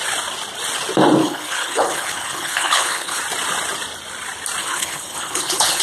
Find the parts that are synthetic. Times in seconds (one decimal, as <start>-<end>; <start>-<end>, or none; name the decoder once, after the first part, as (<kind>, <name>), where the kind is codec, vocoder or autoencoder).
1.2-3.2 (codec, HILCodec); 4.6-5.8